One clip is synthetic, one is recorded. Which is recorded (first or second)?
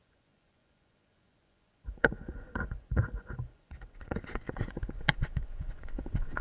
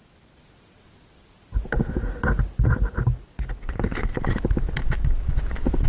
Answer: second